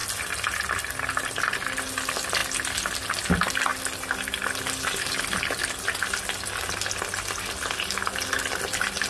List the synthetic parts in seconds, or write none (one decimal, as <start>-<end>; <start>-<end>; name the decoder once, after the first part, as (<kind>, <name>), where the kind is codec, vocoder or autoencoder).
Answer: none